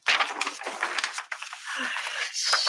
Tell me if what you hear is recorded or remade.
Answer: recorded